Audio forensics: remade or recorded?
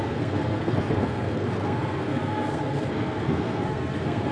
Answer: remade